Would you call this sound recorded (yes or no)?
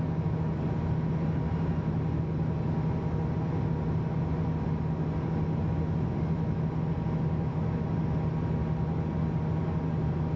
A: yes